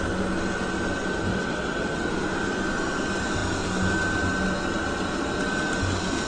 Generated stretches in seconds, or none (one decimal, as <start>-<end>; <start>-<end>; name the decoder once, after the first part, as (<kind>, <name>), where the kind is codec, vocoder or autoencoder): 1.3-2.1 (vocoder, WaveNeXt)